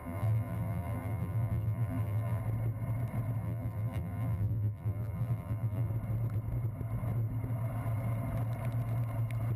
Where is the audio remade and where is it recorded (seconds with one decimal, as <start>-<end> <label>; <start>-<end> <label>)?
0.0-2.4 remade; 2.4-3.4 recorded; 3.4-5.9 remade; 5.9-9.6 recorded